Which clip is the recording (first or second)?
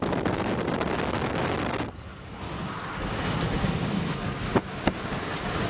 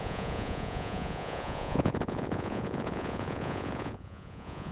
first